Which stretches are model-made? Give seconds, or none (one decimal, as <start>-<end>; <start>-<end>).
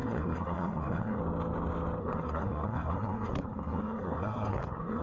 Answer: 0.0-1.2; 2.0-5.0